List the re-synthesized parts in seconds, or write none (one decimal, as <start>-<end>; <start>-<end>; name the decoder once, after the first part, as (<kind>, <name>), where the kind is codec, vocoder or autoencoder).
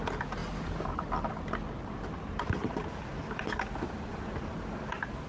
none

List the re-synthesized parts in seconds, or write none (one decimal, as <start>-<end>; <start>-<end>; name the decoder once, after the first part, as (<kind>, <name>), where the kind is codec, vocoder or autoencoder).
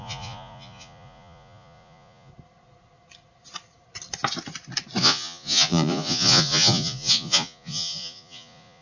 0.0-2.3 (vocoder, Vocos); 5.0-8.8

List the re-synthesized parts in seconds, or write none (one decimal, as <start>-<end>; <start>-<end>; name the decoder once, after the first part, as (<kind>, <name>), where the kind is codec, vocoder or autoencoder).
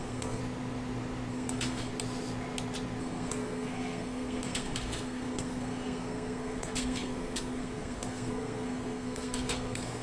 0.0-0.4 (codec, SNAC); 1.3-1.9; 3.0-10.0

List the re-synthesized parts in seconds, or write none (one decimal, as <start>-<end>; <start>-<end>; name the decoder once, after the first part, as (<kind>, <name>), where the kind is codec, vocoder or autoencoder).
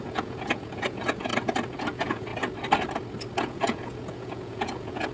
0.0-1.3 (vocoder, Vocos); 1.8-2.3; 3.4-5.1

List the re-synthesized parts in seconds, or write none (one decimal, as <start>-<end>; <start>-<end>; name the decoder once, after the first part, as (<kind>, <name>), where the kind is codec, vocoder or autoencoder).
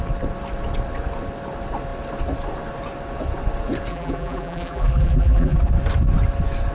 3.9-5.6 (vocoder, BigVGAN v2)